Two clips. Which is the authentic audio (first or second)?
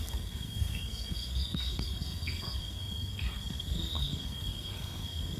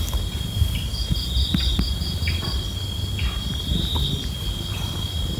second